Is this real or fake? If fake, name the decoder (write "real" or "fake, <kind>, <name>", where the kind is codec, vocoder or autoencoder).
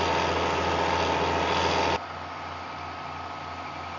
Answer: real